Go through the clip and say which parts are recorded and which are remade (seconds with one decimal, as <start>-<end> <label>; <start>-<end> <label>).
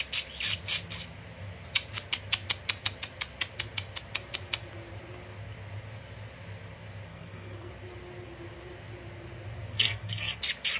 0.0-7.1 recorded; 7.1-7.7 remade; 7.7-9.7 recorded; 9.7-10.4 remade; 10.4-10.8 recorded